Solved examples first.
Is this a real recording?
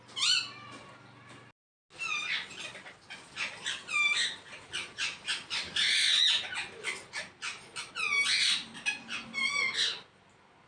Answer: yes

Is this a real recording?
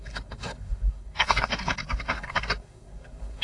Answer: no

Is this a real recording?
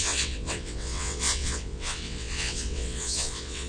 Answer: no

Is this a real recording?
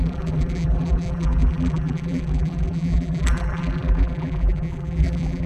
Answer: no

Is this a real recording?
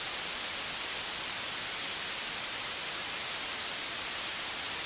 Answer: yes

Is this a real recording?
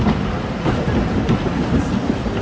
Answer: yes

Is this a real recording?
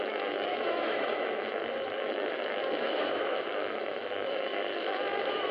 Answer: no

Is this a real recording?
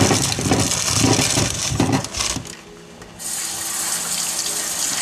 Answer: yes